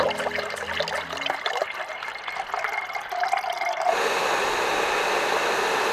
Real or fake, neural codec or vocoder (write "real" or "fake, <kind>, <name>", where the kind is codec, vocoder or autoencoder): real